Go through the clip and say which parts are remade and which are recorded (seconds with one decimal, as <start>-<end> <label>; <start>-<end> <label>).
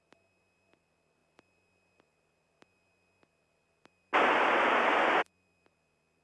0.0-6.2 recorded